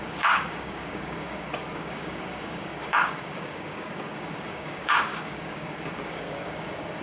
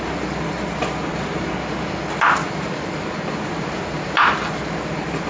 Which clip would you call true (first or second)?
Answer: second